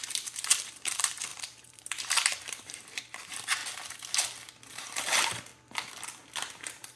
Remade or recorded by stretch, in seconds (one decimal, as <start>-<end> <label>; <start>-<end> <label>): 0.0-3.6 remade; 3.6-4.7 recorded; 4.7-5.5 remade; 5.5-6.5 recorded; 6.5-7.0 remade